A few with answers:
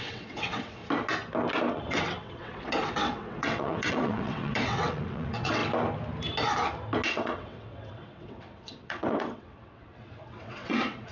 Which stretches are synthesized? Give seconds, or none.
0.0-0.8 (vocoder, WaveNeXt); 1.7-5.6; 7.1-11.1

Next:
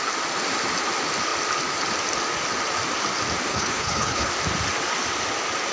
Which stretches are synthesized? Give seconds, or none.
3.5-4.3 (codec, HILCodec)